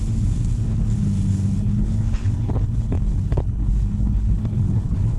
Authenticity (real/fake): fake